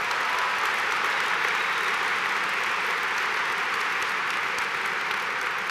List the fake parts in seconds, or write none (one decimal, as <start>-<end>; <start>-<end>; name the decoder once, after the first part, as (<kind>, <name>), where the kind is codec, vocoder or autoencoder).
none